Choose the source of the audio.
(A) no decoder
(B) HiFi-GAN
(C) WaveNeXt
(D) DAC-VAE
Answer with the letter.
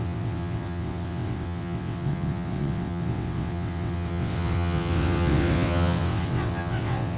C